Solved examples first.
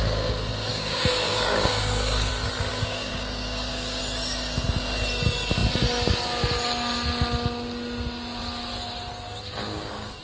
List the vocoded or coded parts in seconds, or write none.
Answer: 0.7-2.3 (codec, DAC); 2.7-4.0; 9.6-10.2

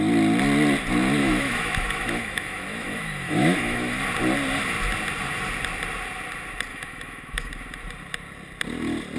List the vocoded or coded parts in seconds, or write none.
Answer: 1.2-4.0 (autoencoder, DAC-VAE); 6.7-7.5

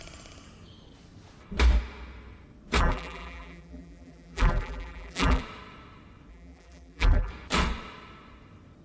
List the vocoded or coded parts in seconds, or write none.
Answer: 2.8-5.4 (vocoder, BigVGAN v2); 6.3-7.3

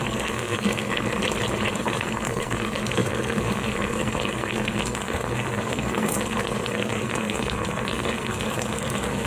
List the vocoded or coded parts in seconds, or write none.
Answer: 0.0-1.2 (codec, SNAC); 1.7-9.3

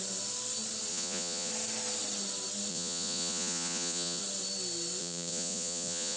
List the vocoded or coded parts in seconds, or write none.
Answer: 0.9-1.5 (vocoder, Vocos); 2.7-4.2; 5.0-6.2

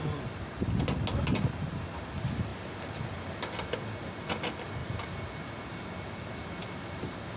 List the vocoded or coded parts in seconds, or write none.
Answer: none